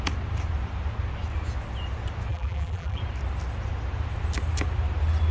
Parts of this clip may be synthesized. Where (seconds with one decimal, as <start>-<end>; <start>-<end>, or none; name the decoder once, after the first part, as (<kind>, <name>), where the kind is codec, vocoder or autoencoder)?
2.3-3.0 (vocoder, BigVGAN v2)